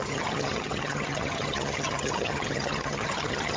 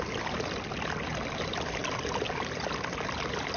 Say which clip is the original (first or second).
second